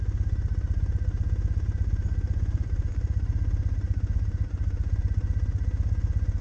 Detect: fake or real real